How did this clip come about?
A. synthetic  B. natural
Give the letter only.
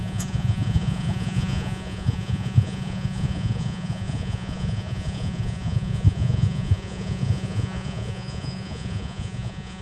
A